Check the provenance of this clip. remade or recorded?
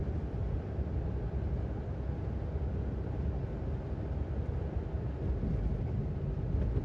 recorded